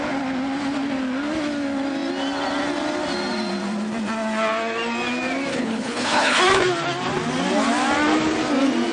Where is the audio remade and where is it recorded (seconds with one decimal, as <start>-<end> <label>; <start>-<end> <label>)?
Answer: 0.0-5.5 recorded; 5.5-6.4 remade; 6.4-8.9 recorded